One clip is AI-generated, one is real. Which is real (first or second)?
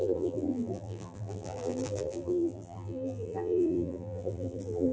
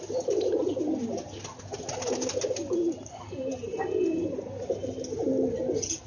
second